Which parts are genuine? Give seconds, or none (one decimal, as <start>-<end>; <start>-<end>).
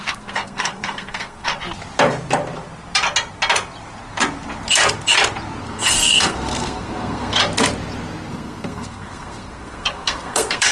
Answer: 1.5-5.6; 7.4-8.3